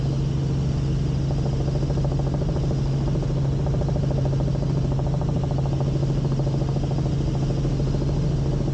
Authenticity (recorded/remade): recorded